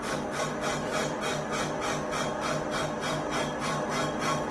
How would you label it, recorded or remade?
recorded